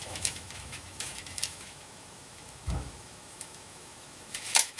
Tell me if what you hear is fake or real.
fake